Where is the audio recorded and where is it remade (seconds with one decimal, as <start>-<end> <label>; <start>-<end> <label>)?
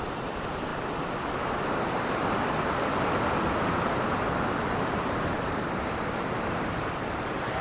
0.0-0.7 remade; 0.7-4.8 recorded; 4.8-7.6 remade